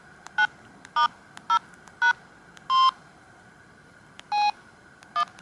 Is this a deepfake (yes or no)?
no